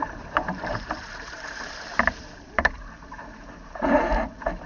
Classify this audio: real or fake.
fake